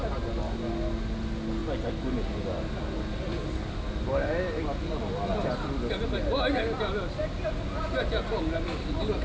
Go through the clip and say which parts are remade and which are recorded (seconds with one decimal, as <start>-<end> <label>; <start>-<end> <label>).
0.0-9.2 recorded